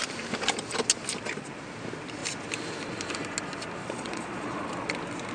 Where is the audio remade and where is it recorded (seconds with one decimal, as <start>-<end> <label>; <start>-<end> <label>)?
0.0-3.8 recorded; 3.8-4.6 remade; 4.6-5.3 recorded